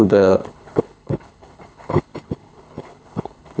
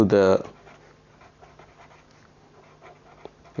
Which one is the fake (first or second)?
first